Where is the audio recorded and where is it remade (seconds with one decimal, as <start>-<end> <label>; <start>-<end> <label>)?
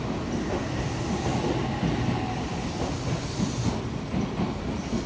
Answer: 0.0-5.1 recorded